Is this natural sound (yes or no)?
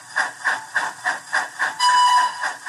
yes